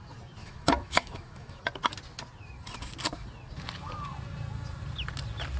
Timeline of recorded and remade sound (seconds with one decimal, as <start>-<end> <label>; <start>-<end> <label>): 0.0-0.4 recorded; 0.4-1.6 remade; 1.6-5.6 recorded